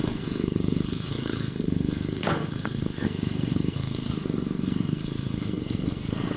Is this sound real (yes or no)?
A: no